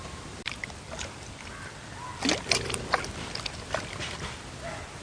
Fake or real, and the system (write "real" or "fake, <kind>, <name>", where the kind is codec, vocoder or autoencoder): real